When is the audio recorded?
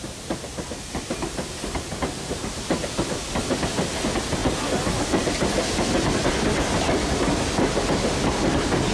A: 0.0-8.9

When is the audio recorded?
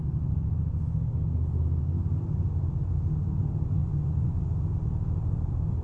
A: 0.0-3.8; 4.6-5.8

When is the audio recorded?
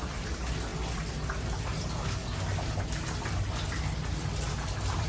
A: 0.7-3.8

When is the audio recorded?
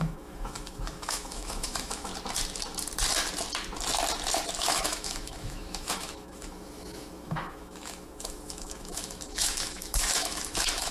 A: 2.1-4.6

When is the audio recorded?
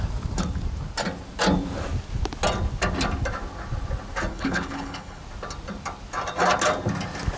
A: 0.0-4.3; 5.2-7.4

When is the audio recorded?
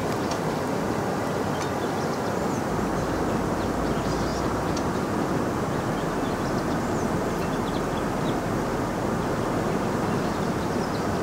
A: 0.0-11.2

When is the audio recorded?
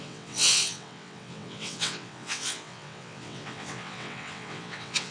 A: none